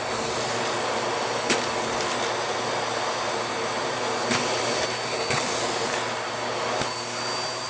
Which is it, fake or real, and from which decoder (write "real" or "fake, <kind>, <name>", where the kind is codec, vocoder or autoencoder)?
real